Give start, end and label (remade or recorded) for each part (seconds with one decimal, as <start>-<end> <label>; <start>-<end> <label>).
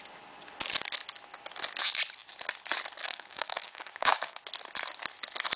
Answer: 0.0-3.0 recorded; 3.0-4.4 remade; 4.4-5.6 recorded